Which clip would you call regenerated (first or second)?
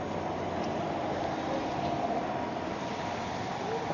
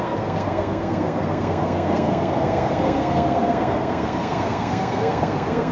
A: second